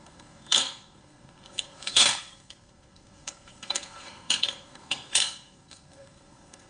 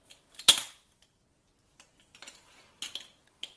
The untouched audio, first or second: second